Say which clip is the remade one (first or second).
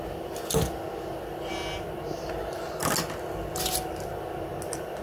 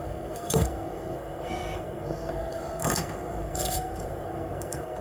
second